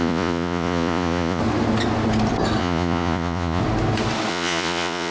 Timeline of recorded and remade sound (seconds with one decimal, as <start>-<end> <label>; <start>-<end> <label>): 0.0-1.4 remade; 1.4-2.6 recorded; 2.6-3.6 remade; 3.6-4.3 recorded; 4.3-5.1 remade